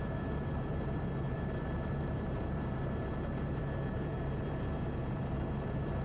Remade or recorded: remade